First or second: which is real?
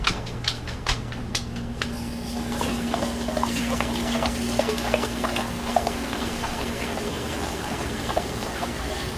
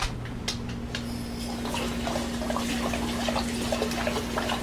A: second